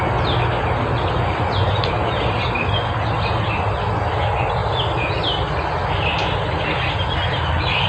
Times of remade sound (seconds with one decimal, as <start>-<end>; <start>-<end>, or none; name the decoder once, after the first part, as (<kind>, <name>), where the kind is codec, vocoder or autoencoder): 0.0-2.0 (vocoder, BigVGAN v2); 4.1-4.6; 5.9-7.9

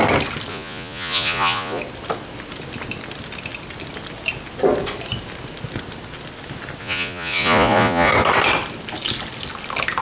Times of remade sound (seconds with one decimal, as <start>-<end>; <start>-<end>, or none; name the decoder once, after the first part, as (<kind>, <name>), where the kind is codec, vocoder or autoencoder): 0.5-1.8 (vocoder, Vocos); 6.8-8.1

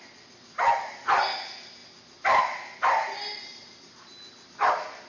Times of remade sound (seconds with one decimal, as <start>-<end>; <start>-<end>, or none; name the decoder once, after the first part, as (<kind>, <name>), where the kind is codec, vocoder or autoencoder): none